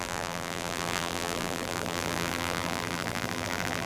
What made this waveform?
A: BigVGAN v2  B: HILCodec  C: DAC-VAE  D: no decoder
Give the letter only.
A